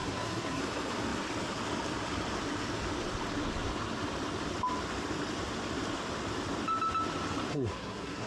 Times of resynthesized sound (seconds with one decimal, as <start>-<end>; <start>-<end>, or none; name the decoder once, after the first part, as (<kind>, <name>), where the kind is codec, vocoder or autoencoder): 0.0-0.6 (codec, SNAC); 7.5-8.3

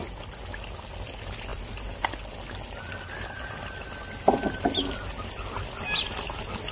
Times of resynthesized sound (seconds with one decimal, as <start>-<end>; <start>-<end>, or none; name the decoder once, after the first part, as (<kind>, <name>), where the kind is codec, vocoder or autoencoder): none

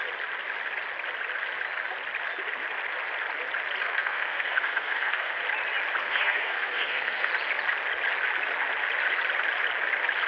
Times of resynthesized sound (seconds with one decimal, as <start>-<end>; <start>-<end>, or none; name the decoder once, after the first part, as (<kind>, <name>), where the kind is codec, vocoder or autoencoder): 3.8-5.4 (codec, SNAC); 6.0-7.3

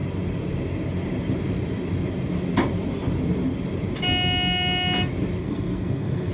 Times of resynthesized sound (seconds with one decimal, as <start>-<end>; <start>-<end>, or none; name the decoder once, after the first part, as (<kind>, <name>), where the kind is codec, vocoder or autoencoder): 5.4-6.3 (codec, SNAC)

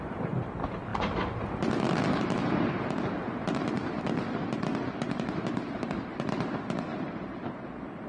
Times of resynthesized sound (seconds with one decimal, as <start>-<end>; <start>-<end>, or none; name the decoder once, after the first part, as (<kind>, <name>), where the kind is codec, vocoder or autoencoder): 0.0-0.9 (vocoder, BigVGAN v2); 4.0-8.1

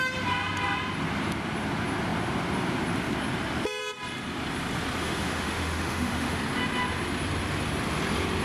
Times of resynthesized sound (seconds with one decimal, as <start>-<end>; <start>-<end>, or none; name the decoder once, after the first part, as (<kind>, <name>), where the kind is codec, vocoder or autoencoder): 5.0-6.4 (autoencoder, DAC-VAE)

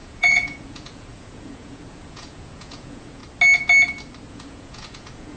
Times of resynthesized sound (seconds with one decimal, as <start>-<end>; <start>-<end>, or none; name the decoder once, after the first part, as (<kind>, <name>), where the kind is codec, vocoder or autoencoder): 0.0-3.2 (vocoder, Vocos); 4.3-5.4